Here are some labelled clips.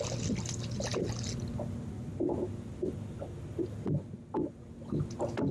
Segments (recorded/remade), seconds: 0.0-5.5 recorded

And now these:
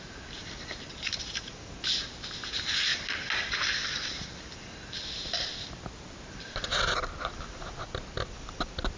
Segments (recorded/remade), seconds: 0.0-9.0 recorded

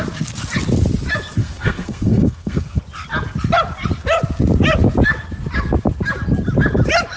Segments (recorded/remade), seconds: 0.0-1.4 recorded; 1.4-2.8 remade; 2.8-7.2 recorded

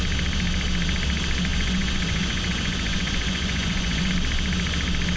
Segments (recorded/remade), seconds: 0.0-1.5 recorded; 1.5-4.1 remade; 4.1-5.2 recorded